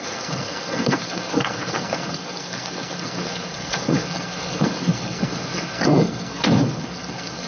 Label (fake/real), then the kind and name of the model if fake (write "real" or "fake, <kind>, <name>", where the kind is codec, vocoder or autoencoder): fake, codec, SNAC